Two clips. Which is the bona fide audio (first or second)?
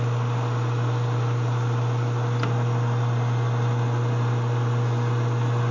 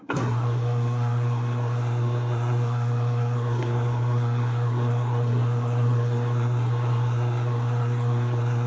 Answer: first